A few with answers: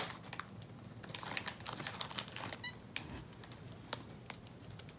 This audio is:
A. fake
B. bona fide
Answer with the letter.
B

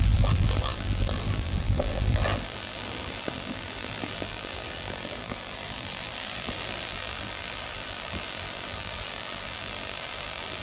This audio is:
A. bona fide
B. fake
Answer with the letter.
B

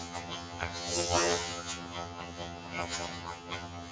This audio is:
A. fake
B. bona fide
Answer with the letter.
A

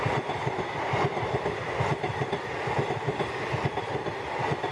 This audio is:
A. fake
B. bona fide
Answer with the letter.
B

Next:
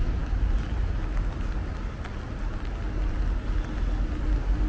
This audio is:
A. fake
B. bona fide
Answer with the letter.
B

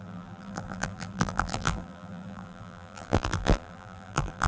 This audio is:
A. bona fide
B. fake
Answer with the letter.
B